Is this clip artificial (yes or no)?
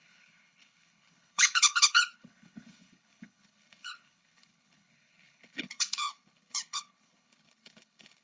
yes